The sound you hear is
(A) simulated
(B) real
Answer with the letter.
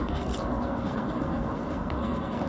A